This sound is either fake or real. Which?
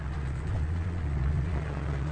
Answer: fake